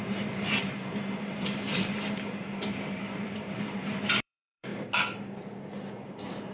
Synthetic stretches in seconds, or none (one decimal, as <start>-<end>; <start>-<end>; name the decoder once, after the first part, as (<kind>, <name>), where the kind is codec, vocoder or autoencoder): 0.0-4.7 (vocoder, BigVGAN v2); 6.1-6.5